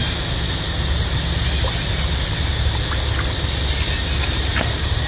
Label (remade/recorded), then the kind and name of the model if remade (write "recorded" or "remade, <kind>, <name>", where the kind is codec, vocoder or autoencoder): recorded